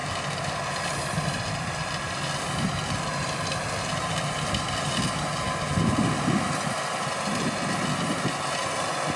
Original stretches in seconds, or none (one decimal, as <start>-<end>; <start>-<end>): 0.0-9.2